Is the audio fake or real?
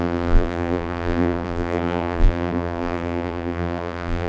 fake